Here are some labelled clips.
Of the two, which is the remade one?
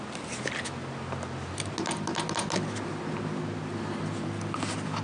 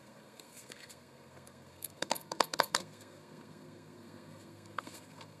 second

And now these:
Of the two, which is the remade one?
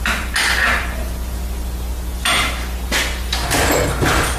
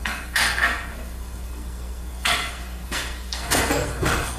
second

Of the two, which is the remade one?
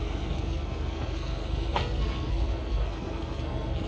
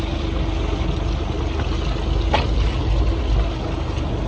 first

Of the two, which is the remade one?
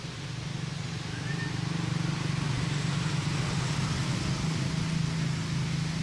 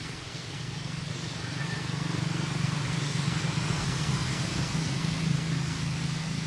second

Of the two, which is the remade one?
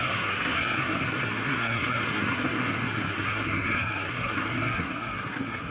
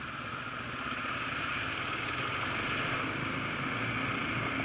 first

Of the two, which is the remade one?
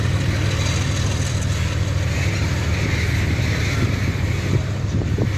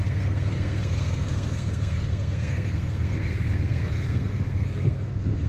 second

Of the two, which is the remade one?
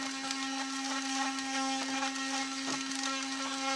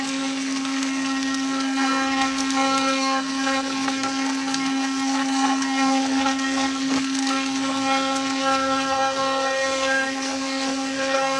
second